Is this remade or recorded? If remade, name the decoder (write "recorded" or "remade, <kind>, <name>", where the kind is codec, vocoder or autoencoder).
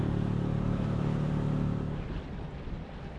recorded